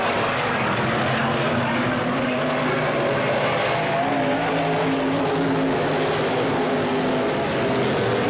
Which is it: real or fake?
real